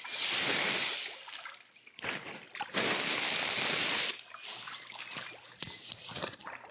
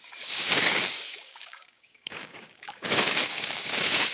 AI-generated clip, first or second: second